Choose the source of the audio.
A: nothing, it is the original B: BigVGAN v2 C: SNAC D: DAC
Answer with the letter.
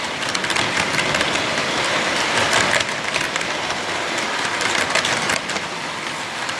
B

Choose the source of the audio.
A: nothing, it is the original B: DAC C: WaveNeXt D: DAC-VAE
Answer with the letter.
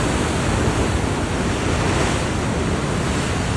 A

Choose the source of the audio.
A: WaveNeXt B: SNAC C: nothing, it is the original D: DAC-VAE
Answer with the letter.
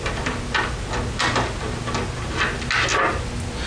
C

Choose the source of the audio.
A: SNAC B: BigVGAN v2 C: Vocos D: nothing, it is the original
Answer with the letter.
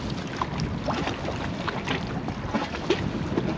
D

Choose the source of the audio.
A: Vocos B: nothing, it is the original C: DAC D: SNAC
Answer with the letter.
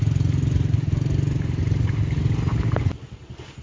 B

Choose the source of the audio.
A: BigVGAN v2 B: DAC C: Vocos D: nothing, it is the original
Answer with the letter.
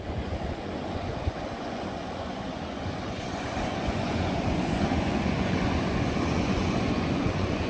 C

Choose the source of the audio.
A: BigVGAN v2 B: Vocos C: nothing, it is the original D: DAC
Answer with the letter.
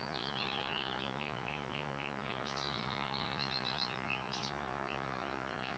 B